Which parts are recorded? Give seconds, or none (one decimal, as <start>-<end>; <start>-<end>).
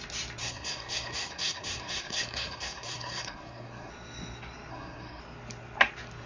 0.0-0.4; 3.9-4.7; 5.2-6.3